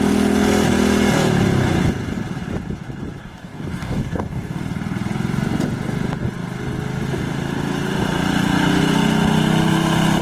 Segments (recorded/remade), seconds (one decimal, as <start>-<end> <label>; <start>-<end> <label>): 0.0-3.2 recorded; 3.2-4.6 remade; 4.6-10.2 recorded